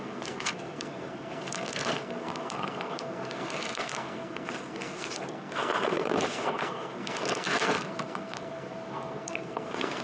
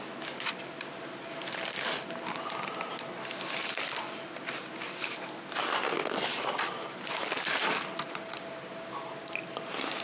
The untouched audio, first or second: second